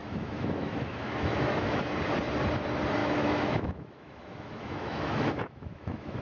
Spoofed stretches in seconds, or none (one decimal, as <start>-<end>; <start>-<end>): 0.0-1.8; 3.0-6.2